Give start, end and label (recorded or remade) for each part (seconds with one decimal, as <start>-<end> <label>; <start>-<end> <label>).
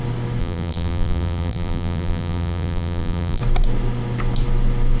0.0-0.4 recorded; 0.4-3.4 remade; 3.4-5.0 recorded